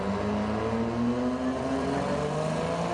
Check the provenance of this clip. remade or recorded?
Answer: recorded